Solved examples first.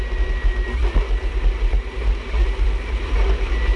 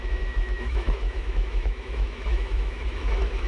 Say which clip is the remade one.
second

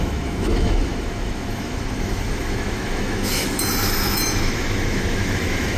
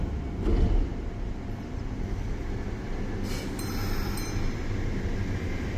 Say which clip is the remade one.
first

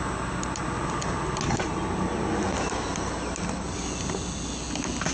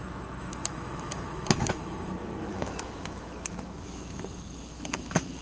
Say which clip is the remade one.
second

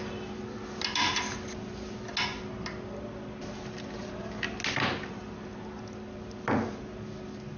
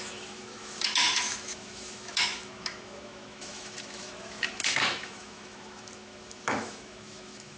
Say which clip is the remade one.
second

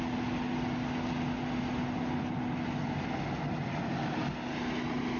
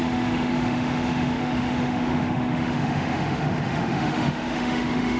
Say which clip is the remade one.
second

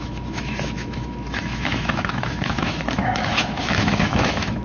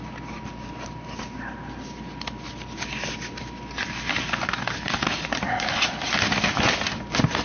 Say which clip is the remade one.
first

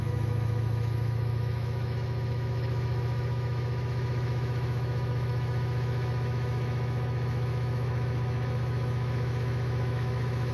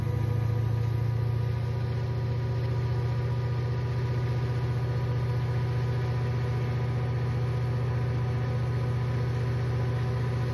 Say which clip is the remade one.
first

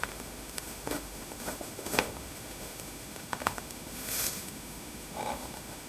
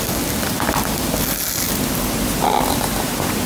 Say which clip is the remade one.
first